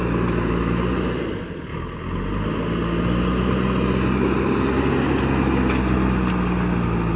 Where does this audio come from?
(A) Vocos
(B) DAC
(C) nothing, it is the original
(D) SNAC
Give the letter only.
C